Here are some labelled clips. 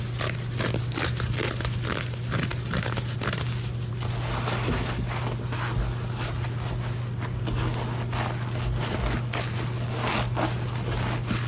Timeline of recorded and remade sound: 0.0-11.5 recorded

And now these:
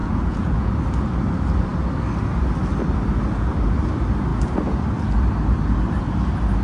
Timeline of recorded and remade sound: 0.0-0.7 remade; 0.7-6.6 recorded